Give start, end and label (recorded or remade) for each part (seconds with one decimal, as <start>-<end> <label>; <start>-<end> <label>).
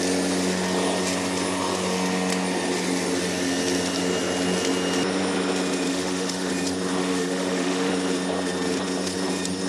0.0-5.9 recorded; 5.9-6.5 remade; 6.5-7.0 recorded; 7.0-7.9 remade; 7.9-9.7 recorded